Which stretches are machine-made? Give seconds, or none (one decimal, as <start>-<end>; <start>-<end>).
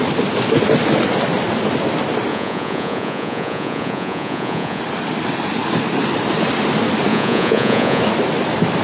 2.3-4.8; 7.1-8.0